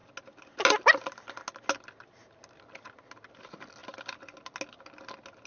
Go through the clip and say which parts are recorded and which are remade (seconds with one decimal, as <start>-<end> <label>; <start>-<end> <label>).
0.0-5.5 recorded